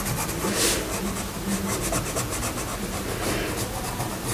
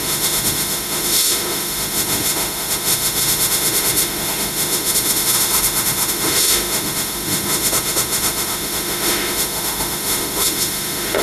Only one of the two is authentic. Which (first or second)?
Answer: first